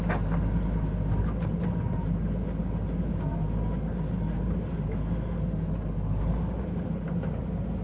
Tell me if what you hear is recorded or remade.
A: recorded